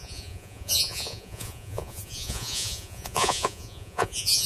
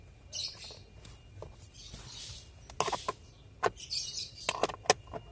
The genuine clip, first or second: second